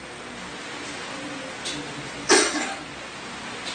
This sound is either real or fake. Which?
real